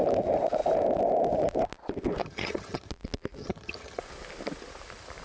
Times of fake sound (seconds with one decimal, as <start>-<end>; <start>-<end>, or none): 2.2-2.9; 3.4-4.0